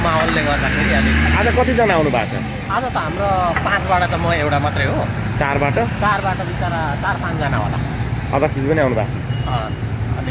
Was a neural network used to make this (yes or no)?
no